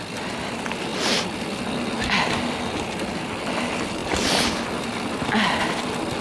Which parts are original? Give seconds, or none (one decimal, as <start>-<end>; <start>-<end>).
0.0-6.2